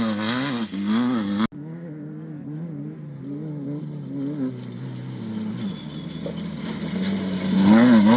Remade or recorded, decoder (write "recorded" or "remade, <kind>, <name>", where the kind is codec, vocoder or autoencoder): recorded